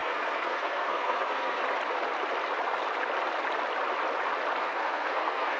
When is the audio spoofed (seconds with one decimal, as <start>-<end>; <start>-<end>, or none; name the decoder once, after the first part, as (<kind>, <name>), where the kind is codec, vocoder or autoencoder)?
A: 0.0-1.6 (codec, SNAC); 4.6-5.6